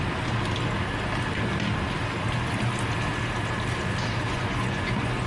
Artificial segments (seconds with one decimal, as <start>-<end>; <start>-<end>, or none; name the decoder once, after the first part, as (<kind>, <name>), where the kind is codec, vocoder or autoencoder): 4.3-5.3 (vocoder, Vocos)